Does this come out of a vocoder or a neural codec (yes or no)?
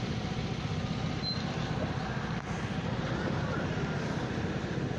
no